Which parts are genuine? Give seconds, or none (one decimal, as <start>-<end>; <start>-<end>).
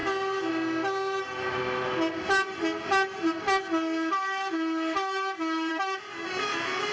0.0-6.9